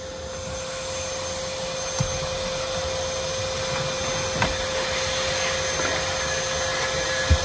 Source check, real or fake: real